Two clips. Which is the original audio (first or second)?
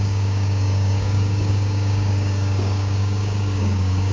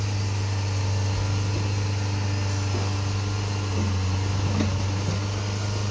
second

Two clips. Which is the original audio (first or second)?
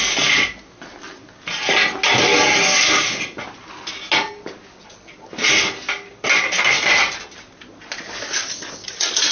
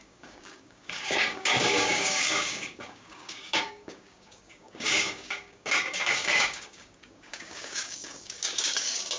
first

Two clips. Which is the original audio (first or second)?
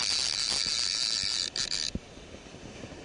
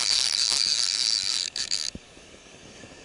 first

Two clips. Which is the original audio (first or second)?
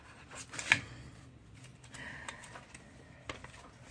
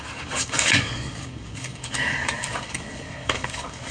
first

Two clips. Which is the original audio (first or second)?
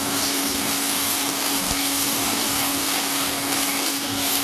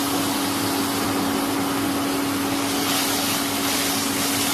second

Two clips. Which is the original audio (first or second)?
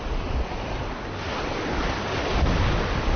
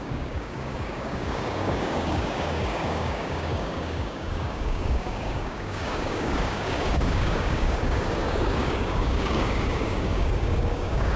first